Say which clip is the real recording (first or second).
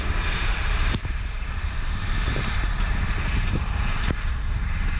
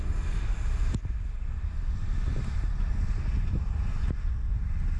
second